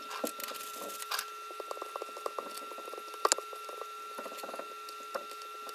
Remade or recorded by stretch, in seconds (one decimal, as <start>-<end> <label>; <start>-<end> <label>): 0.0-5.7 recorded